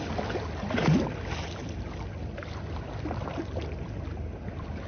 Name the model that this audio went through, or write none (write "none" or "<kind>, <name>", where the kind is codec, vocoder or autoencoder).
none